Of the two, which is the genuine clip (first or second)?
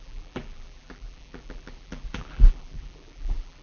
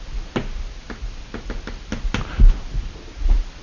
second